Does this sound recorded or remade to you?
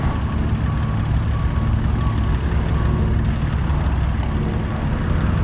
recorded